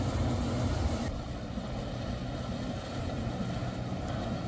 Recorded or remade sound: recorded